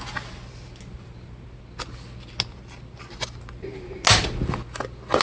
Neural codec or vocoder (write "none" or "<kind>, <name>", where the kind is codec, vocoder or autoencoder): none